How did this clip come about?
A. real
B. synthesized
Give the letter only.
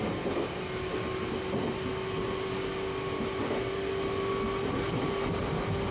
A